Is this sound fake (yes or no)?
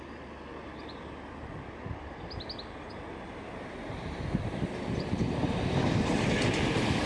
no